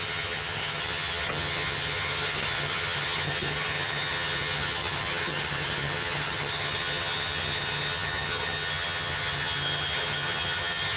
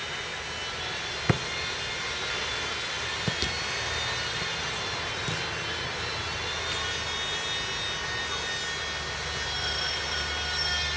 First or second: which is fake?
first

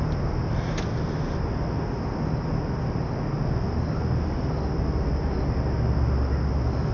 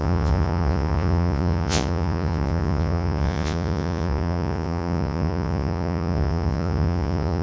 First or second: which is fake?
second